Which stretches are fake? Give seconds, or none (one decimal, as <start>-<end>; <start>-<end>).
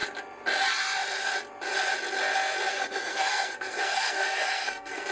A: 2.7-5.1